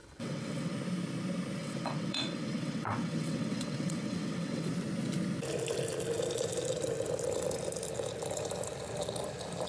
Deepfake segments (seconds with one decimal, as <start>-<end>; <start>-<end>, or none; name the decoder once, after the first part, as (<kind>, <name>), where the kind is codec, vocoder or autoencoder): 0.0-0.7 (vocoder, WaveNeXt); 1.6-4.7